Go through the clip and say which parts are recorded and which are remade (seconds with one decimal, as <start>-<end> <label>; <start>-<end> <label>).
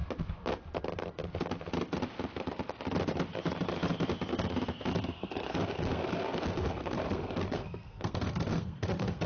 0.0-5.0 recorded; 5.0-9.3 remade